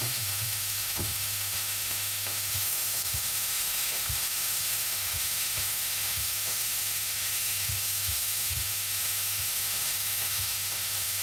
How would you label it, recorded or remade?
remade